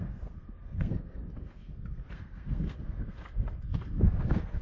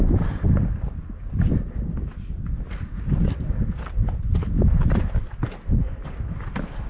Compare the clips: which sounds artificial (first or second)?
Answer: first